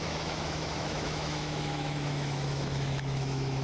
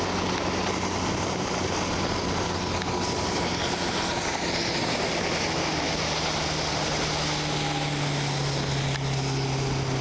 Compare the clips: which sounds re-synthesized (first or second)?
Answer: first